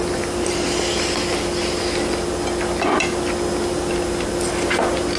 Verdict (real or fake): real